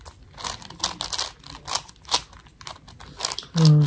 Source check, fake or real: real